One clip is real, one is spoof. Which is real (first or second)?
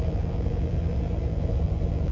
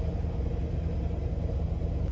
second